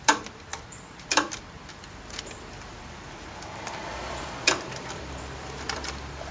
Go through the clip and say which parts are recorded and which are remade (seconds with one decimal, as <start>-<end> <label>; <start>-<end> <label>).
0.0-6.3 remade